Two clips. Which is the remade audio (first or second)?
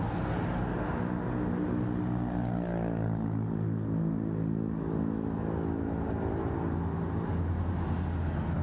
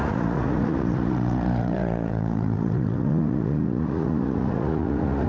second